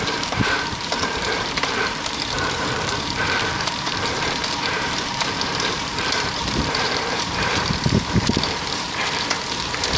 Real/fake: fake